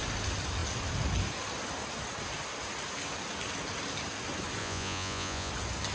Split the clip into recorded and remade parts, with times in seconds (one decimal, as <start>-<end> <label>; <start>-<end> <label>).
0.0-4.6 recorded; 4.6-5.5 remade; 5.5-5.9 recorded